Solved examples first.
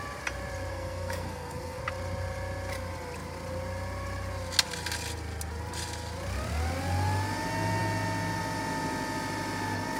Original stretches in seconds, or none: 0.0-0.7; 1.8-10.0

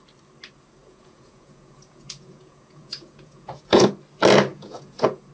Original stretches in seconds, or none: 0.0-0.8; 3.9-4.5

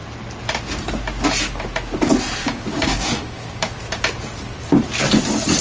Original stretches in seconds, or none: 0.0-2.4; 3.7-5.6

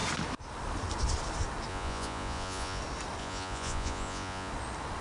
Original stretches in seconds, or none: 0.0-1.7; 2.8-3.2; 4.5-5.0

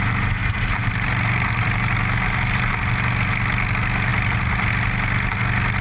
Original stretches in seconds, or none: 0.0-0.4; 2.7-5.8

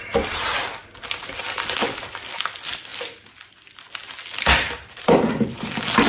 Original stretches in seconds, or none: 0.0-6.1

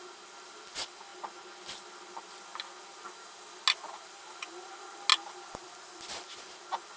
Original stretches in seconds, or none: 0.0-7.0

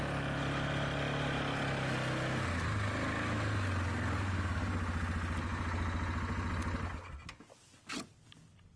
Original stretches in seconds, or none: 0.0-8.8